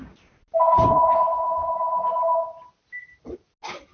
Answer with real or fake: real